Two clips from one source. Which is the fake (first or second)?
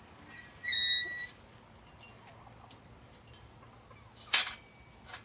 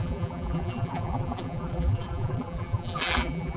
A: second